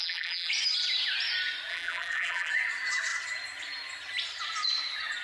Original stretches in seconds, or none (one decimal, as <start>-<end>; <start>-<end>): 0.5-1.7; 2.5-5.2